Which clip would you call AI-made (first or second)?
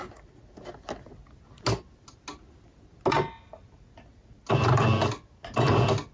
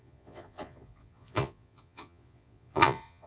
second